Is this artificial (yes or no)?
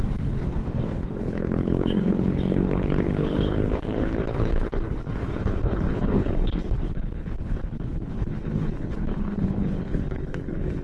yes